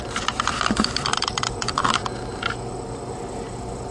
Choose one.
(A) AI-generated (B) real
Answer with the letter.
B